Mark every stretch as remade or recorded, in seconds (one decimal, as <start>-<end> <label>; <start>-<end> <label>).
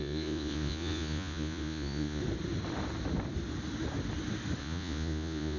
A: 0.0-2.2 remade; 2.2-4.6 recorded; 4.6-5.6 remade